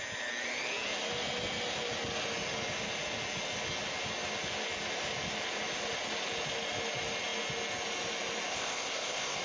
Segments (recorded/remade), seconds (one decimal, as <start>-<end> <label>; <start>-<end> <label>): 0.0-8.5 recorded; 8.5-9.4 remade